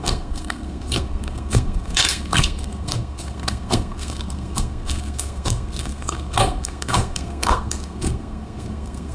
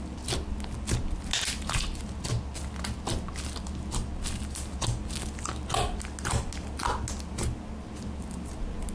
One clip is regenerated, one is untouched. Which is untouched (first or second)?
second